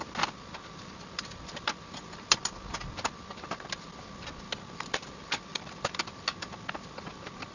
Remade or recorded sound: remade